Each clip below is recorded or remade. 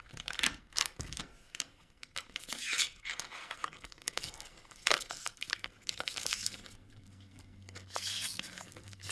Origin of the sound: remade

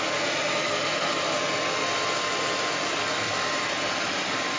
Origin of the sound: recorded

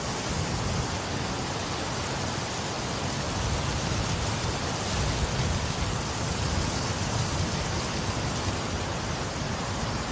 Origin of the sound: recorded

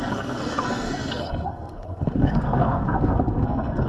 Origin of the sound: remade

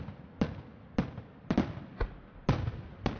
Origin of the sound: recorded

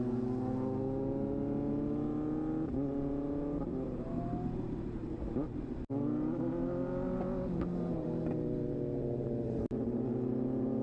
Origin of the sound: recorded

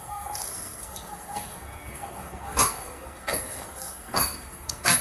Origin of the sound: remade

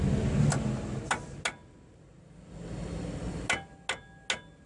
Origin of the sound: recorded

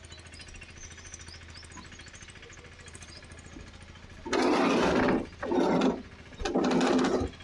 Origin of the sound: recorded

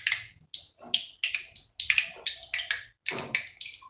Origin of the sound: recorded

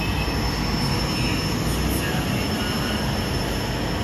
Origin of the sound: recorded